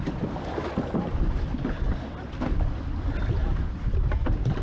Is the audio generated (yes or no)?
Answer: no